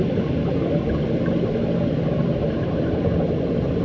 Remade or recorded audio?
recorded